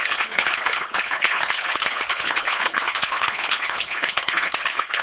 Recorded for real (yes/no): no